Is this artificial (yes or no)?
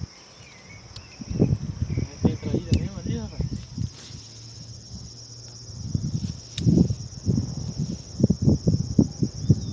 no